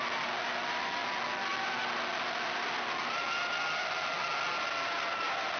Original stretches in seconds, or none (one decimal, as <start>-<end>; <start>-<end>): 0.0-5.6